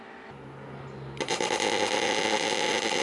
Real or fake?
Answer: real